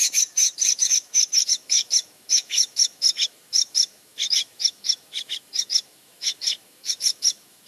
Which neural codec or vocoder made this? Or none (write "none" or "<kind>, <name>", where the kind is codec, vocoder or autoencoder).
autoencoder, DAC-VAE